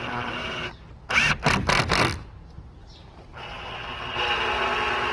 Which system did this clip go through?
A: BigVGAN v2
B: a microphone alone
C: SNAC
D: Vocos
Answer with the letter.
B